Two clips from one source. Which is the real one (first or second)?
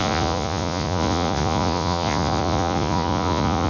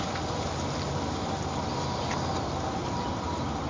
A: second